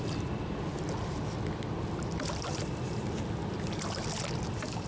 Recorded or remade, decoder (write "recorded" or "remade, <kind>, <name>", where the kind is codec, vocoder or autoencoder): recorded